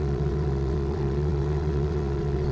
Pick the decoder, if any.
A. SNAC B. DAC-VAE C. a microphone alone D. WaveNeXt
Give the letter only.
D